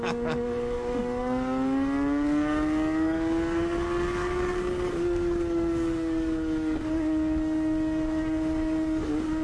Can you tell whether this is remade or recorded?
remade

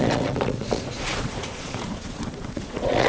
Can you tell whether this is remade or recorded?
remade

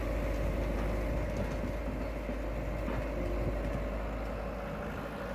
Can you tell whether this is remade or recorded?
recorded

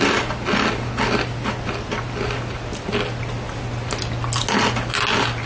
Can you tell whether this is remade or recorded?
recorded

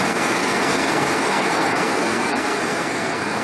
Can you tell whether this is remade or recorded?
remade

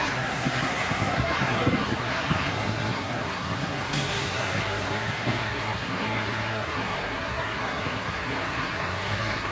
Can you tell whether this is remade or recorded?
remade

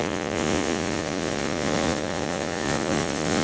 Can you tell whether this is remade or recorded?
remade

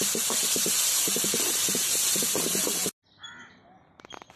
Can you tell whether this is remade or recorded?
recorded